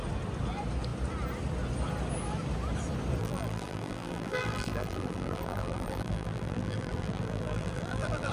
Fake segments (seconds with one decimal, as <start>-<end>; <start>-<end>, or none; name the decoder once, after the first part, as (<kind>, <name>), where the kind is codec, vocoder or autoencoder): 3.2-8.3 (vocoder, BigVGAN v2)